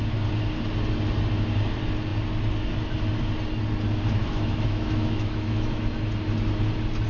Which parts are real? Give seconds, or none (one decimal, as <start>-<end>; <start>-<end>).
0.0-4.2; 5.9-7.1